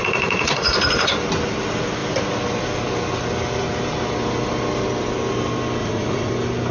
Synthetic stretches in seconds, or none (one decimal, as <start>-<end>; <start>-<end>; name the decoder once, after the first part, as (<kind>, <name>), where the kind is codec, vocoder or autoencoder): 0.0-1.1 (vocoder, Vocos); 5.8-6.3